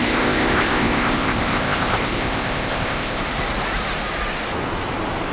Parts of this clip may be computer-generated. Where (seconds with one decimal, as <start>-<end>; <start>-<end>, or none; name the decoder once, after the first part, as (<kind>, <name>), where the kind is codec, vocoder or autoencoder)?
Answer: 0.0-3.2 (codec, ZipCodec)